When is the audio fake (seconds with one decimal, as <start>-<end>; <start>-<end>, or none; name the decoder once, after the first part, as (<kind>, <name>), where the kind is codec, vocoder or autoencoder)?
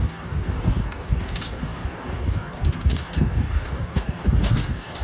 0.0-5.0 (codec, DAC)